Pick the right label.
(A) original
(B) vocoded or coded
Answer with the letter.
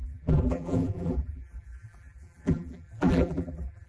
B